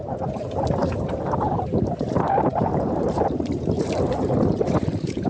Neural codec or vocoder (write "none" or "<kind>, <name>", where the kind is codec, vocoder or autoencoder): vocoder, BigVGAN v2